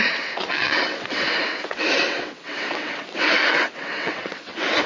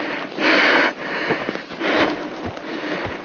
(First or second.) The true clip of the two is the second